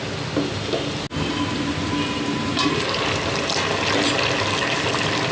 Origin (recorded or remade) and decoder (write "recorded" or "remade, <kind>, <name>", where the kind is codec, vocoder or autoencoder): recorded